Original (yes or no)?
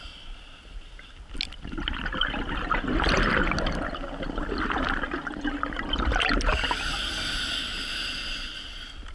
yes